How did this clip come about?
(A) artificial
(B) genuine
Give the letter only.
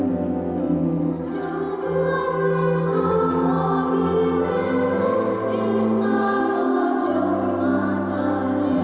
B